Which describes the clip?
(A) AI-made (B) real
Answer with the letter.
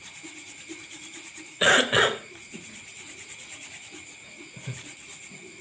A